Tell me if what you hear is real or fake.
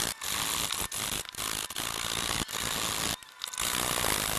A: real